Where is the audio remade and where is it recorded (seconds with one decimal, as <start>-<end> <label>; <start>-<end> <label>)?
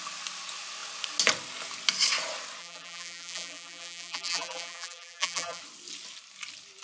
0.0-2.6 recorded; 2.6-5.6 remade; 5.6-6.8 recorded